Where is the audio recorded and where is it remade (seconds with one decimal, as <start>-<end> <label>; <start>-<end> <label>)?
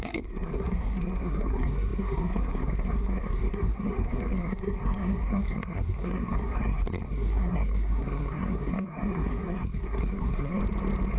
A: 0.0-10.6 remade; 10.6-11.2 recorded